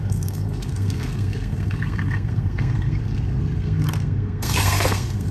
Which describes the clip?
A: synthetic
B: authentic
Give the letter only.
A